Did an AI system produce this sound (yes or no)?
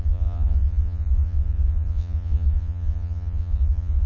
yes